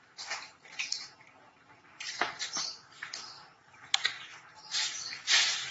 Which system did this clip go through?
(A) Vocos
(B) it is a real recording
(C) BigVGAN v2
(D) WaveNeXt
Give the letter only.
C